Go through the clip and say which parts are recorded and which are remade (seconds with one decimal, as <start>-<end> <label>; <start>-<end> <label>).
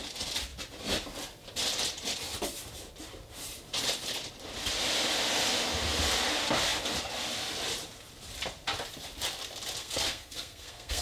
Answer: 0.0-9.8 recorded; 9.8-11.0 remade